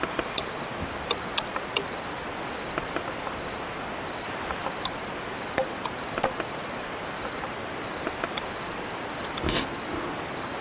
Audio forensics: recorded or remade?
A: recorded